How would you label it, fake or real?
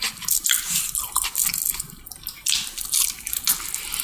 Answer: real